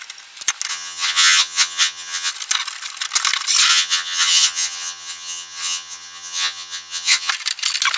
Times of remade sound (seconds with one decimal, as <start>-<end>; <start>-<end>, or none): 0.7-2.3; 3.7-7.3